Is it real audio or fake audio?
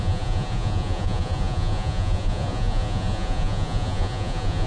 fake